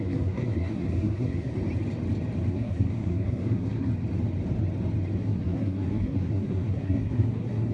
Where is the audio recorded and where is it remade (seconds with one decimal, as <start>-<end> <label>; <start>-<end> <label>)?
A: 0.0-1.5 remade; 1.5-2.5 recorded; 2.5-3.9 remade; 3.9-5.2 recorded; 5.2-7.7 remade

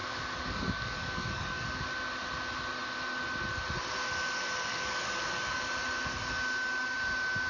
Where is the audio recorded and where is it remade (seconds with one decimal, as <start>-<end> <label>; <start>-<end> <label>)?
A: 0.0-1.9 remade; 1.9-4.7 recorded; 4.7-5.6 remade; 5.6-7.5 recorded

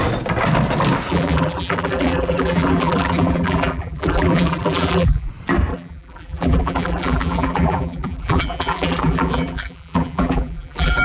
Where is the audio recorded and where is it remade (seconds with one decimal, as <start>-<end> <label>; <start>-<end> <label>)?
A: 0.0-1.1 recorded; 1.1-5.3 remade; 5.3-5.7 recorded; 5.7-11.0 remade

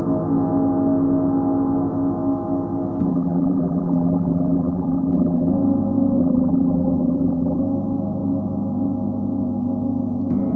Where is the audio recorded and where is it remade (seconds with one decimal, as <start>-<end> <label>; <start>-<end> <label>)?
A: 0.0-3.1 recorded; 3.1-5.5 remade; 5.5-6.2 recorded; 6.2-7.6 remade; 7.6-10.6 recorded

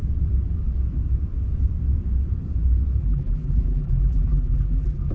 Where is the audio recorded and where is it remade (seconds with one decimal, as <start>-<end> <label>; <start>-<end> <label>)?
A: 0.0-3.0 recorded; 3.0-5.1 remade

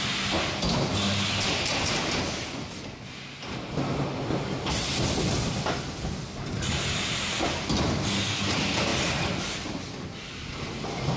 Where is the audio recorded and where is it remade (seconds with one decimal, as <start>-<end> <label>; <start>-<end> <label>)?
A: 0.0-11.2 recorded

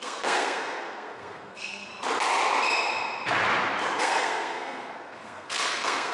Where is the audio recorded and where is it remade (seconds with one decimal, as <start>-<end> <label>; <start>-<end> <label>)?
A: 0.0-1.9 remade; 1.9-4.0 recorded; 4.0-6.1 remade